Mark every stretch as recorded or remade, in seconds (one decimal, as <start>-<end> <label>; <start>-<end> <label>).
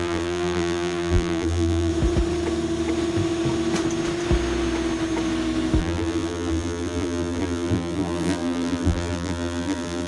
0.0-1.9 remade; 1.9-5.8 recorded; 5.8-10.1 remade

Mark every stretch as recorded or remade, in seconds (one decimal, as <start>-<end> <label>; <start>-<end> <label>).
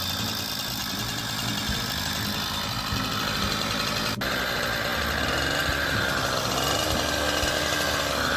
0.0-8.4 recorded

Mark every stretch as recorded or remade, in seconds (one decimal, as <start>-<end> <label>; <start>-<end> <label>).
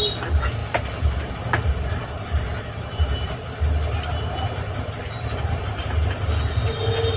0.0-7.2 recorded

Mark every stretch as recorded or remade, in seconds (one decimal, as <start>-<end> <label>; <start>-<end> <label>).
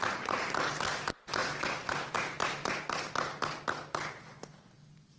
0.0-1.4 recorded; 1.4-2.8 remade; 2.8-5.2 recorded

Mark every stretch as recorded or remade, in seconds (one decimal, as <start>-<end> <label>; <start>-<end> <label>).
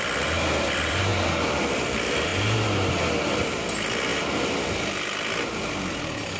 0.0-1.1 remade; 1.1-1.8 recorded; 1.8-2.3 remade; 2.3-3.6 recorded; 3.6-6.4 remade